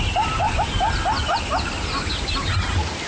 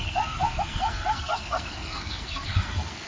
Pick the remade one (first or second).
second